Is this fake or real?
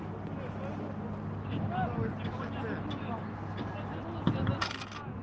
real